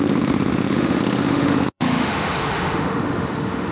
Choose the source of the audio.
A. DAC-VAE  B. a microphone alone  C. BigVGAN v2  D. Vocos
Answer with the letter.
A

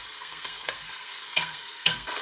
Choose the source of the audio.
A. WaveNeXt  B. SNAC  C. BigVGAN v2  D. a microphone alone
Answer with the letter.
B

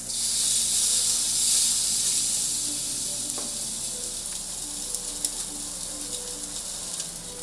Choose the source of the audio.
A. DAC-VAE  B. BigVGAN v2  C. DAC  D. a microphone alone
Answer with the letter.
D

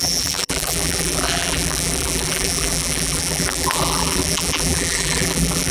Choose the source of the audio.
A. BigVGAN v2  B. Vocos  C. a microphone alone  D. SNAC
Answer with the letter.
A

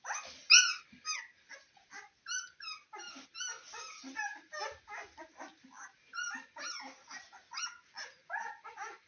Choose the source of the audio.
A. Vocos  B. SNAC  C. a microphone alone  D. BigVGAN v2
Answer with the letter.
C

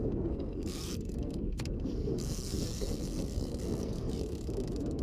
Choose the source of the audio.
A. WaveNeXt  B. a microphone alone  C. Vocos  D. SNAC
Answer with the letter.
D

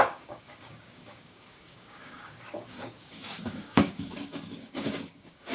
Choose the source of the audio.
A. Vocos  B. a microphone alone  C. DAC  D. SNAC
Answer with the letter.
C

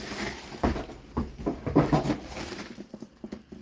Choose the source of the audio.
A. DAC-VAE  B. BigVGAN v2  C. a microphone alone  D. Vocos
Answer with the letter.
B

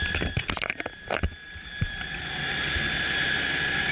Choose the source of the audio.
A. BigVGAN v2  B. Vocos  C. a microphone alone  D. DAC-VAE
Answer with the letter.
C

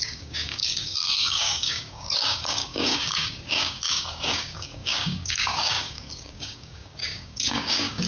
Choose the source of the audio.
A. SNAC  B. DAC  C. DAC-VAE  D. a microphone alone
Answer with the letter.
B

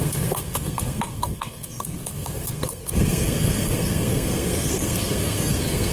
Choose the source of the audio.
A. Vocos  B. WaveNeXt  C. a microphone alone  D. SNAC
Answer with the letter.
D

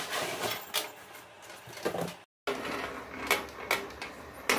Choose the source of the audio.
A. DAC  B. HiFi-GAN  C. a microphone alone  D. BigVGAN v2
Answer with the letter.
C